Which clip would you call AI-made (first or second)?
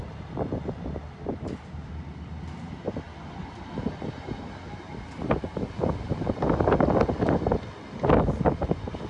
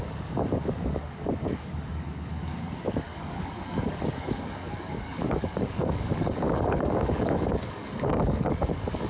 second